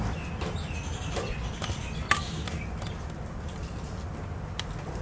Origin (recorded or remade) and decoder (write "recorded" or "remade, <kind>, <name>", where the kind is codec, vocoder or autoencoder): recorded